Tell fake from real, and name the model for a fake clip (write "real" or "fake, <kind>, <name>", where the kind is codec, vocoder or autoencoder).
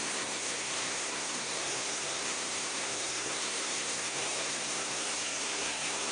fake, codec, SNAC